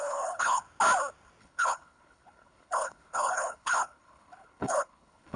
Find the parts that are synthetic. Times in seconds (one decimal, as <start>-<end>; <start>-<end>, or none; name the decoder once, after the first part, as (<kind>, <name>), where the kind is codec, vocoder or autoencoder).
0.0-0.6 (codec, HILCodec); 1.4-5.4